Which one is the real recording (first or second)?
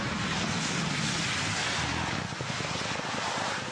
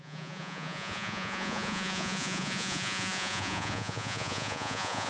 first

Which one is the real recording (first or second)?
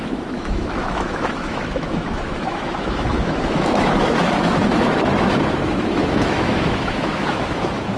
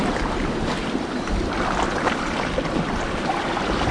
second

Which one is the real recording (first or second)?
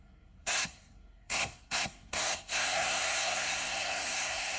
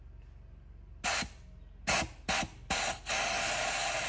second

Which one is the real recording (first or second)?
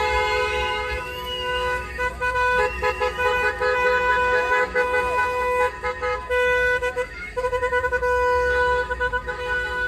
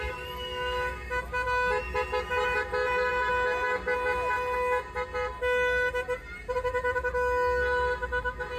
second